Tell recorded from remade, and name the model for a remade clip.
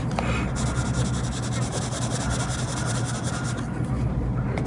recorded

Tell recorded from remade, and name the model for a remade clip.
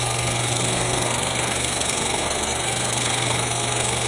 remade, codec, SNAC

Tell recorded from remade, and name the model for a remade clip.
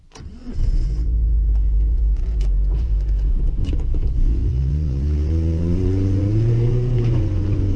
remade, vocoder, Vocos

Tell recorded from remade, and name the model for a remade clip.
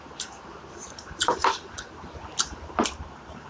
remade, vocoder, BigVGAN v2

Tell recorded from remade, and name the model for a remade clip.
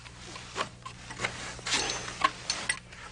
recorded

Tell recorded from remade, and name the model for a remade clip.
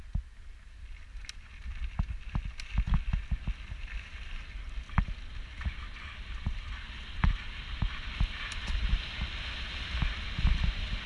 recorded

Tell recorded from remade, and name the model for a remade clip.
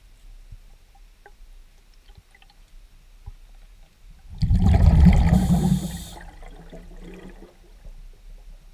recorded